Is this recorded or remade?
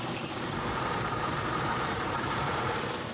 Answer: remade